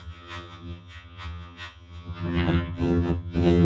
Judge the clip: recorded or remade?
remade